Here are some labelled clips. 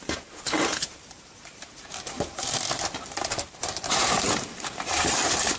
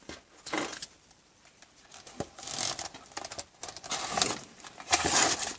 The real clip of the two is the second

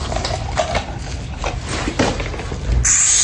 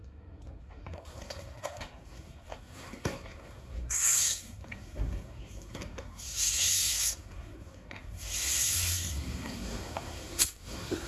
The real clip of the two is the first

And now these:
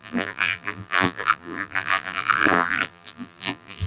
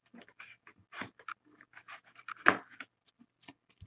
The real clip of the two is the second